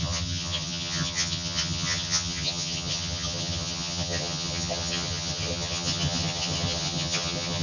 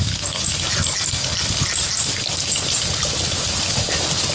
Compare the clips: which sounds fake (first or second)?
first